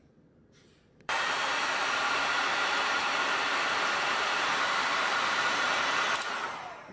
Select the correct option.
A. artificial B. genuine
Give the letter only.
A